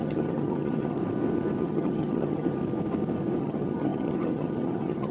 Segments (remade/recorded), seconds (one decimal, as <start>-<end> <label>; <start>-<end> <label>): 0.0-1.0 remade; 1.0-1.6 recorded; 1.6-2.6 remade; 2.6-3.4 recorded; 3.4-5.1 remade